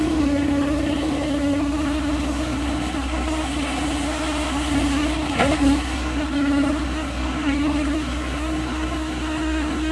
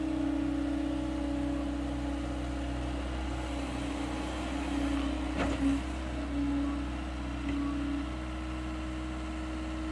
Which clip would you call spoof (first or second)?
first